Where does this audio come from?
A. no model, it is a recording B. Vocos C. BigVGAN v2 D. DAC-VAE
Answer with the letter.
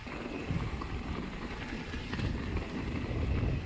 A